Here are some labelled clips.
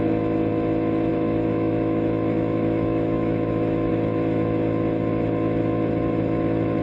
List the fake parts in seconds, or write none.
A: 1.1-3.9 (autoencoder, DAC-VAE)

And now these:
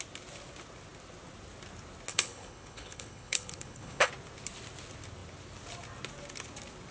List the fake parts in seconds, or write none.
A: 2.1-4.1 (codec, HILCodec)

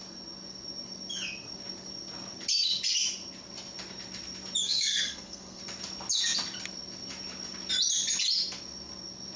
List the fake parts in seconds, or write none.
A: 4.6-5.6 (codec, SNAC)

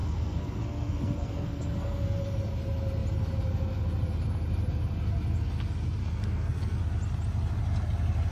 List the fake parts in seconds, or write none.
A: 0.0-2.2 (codec, SNAC); 6.0-6.8

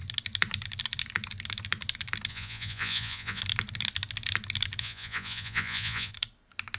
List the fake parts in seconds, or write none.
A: 2.3-3.4 (vocoder, Vocos); 4.8-6.1

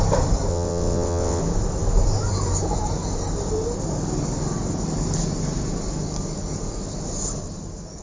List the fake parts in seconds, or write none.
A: 0.5-1.4 (vocoder, WaveNeXt)

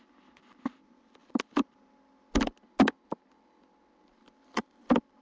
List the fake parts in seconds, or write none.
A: none

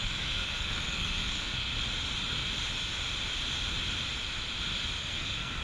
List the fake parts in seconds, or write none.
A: 0.0-1.7 (codec, SNAC); 5.0-5.6